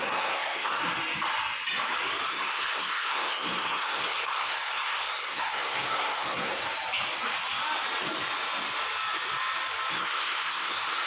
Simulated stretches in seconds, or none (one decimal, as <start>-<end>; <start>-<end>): 0.0-0.8; 2.3-6.5; 9.9-11.1